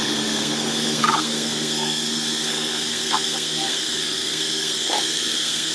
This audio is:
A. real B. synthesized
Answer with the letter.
B